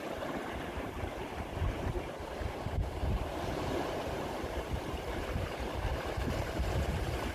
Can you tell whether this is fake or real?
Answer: fake